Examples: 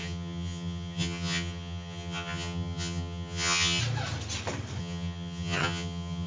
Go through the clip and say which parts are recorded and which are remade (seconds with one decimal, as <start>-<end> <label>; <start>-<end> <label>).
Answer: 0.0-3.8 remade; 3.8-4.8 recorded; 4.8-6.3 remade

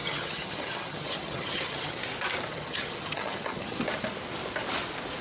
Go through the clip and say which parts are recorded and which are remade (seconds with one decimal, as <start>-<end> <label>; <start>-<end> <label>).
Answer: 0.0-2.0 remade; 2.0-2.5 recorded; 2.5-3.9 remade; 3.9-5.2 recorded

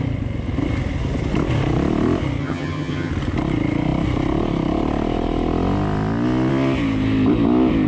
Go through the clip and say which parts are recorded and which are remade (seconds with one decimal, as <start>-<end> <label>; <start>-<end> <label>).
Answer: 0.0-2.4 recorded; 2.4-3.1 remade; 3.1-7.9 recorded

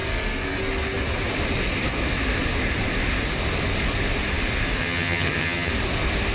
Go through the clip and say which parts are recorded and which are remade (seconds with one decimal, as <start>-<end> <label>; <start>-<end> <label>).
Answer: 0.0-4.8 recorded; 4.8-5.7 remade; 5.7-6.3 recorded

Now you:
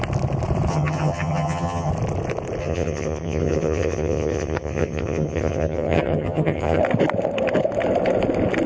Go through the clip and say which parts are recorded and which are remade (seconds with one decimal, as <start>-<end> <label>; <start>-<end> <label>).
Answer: 0.0-0.7 recorded; 0.7-1.9 remade; 1.9-2.6 recorded; 2.6-6.8 remade; 6.8-8.7 recorded

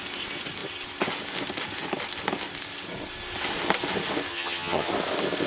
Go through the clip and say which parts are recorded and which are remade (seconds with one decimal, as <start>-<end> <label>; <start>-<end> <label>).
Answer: 0.0-4.3 recorded; 4.3-4.9 remade; 4.9-5.5 recorded